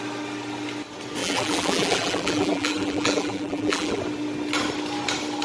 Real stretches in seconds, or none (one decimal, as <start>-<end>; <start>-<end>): 0.0-1.2; 4.0-5.4